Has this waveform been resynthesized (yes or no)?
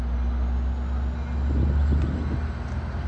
no